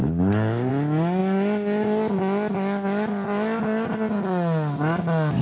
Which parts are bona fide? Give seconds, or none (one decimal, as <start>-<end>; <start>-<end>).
0.7-5.4